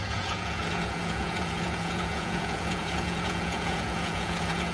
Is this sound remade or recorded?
remade